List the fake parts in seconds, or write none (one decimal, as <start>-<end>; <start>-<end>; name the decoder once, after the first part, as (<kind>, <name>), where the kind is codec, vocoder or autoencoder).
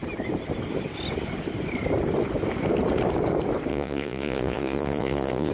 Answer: 3.7-5.5 (vocoder, Vocos)